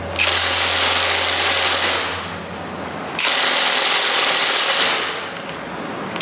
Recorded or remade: recorded